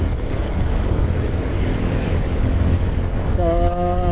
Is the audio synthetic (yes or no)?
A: yes